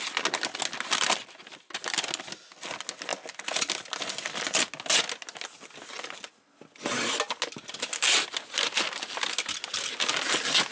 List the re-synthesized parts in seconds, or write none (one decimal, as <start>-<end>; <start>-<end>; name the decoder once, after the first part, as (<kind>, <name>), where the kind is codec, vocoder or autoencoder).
none